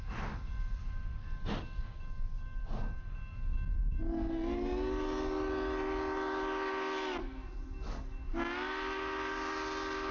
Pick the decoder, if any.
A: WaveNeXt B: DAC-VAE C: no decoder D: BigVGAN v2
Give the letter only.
C